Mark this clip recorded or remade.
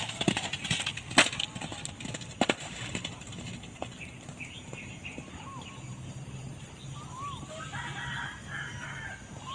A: recorded